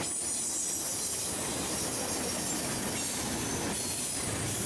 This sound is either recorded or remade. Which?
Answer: recorded